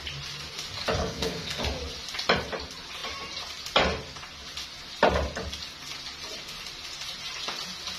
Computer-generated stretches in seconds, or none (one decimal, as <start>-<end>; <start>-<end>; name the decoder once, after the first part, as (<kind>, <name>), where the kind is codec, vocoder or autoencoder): 1.0-1.6 (codec, SNAC)